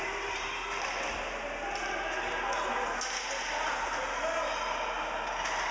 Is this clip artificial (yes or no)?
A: no